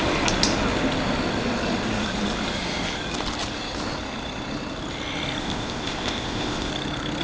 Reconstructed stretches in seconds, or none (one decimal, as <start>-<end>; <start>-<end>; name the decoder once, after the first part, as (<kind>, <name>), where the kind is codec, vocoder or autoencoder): 5.4-6.7 (codec, ZipCodec)